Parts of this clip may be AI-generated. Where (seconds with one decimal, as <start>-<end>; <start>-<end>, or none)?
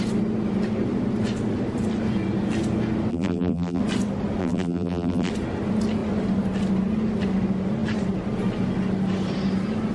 3.1-3.8; 4.4-5.3